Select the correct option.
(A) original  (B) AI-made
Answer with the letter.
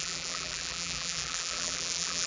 B